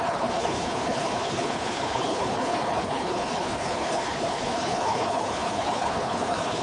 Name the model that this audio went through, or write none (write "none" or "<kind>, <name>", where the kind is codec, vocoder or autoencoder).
codec, HILCodec